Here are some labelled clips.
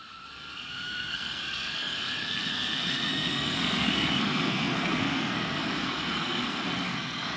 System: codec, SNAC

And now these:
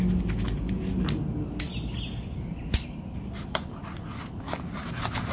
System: none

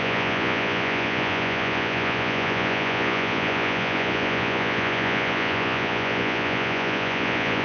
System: vocoder, Vocos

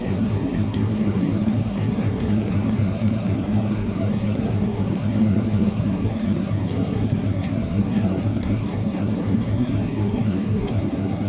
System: codec, SNAC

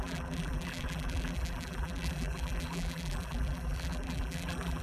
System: vocoder, BigVGAN v2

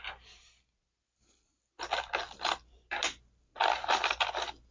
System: none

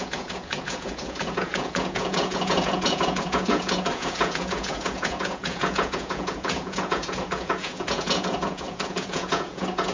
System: vocoder, Vocos